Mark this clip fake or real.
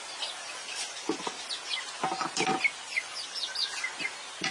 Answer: real